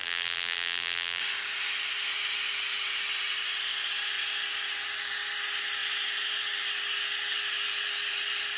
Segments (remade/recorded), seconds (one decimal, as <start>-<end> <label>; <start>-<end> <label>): 0.0-1.2 remade; 1.2-8.6 recorded